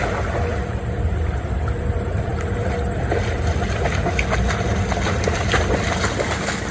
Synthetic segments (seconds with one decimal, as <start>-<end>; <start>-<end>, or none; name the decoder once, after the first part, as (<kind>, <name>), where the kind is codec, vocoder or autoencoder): none